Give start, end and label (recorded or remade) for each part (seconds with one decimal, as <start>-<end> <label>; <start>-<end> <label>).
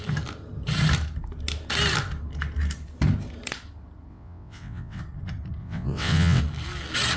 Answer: 0.0-4.1 recorded; 4.1-5.0 remade; 5.0-5.6 recorded; 5.6-6.4 remade; 6.4-7.2 recorded